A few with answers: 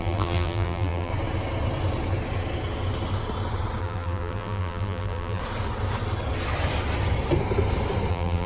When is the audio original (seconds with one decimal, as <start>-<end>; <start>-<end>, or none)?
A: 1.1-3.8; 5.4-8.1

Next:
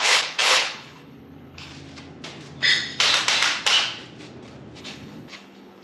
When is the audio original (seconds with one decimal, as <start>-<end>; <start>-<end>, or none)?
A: 1.7-4.8

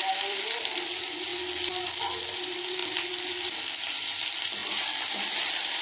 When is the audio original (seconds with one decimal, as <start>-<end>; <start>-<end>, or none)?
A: 1.3-2.0; 2.8-3.3

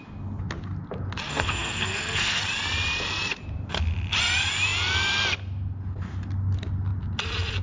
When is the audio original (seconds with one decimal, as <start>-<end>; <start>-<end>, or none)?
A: 0.0-1.3; 2.4-7.6

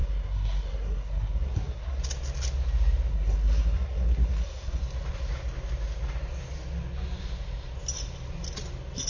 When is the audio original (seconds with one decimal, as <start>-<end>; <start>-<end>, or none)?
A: 2.0-3.1; 4.8-9.1

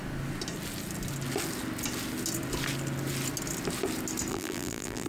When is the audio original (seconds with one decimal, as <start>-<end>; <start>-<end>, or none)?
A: 0.0-4.3